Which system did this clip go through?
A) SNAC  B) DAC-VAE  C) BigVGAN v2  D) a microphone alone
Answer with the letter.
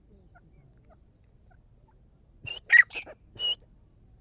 D